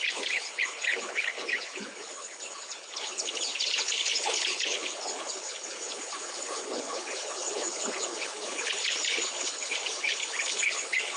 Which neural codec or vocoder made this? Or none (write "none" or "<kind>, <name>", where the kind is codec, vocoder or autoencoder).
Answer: codec, HILCodec